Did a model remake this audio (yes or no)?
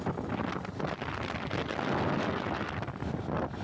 no